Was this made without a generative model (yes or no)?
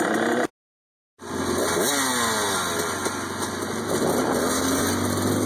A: yes